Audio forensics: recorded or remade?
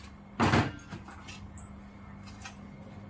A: recorded